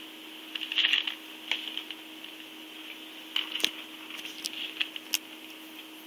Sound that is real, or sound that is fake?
real